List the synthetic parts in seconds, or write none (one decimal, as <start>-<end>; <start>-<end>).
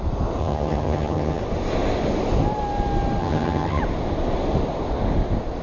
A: 0.4-1.4; 3.2-3.8